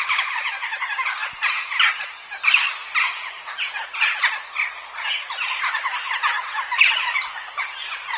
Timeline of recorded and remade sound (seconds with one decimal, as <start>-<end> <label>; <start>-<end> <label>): 0.0-8.2 recorded